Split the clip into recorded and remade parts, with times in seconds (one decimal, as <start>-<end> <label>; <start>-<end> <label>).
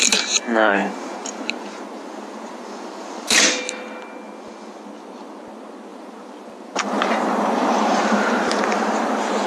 0.0-0.8 recorded; 0.8-3.6 remade; 3.6-5.9 recorded; 5.9-8.4 remade; 8.4-9.5 recorded